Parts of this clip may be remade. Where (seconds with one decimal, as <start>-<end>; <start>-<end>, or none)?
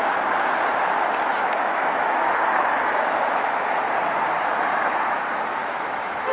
1.3-3.8; 5.6-6.3